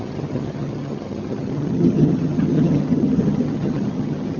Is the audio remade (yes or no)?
yes